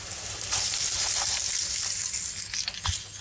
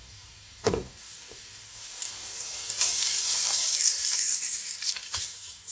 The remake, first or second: second